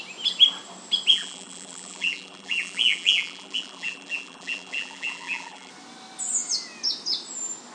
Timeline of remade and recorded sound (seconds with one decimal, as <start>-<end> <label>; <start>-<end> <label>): 0.0-1.1 recorded; 1.1-5.7 remade; 5.7-7.7 recorded